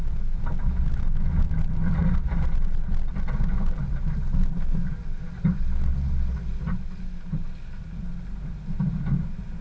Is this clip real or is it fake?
real